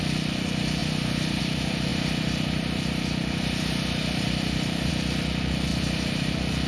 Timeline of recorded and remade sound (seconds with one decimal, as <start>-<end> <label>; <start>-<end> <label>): 0.0-0.8 recorded; 0.8-1.4 remade; 1.4-1.9 recorded; 1.9-4.9 remade; 4.9-5.7 recorded; 5.7-6.3 remade; 6.3-6.7 recorded